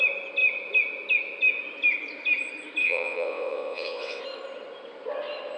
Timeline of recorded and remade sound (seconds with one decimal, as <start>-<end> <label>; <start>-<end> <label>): 0.0-2.8 recorded; 2.8-4.2 remade; 4.2-5.6 recorded